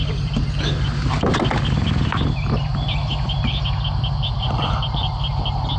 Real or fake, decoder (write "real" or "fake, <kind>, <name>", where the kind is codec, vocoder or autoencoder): real